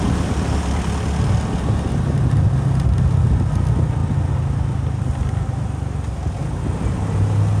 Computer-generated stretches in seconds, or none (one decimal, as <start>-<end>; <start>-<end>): none